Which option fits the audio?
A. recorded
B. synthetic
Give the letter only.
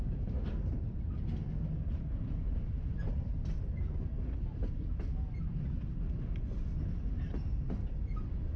A